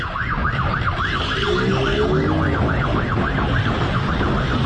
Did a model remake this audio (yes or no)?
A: no